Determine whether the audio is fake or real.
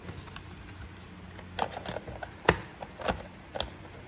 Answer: real